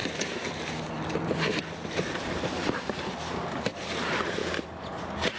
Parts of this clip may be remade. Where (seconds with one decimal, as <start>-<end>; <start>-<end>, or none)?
0.0-4.4